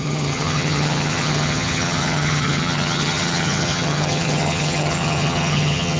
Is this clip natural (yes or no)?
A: no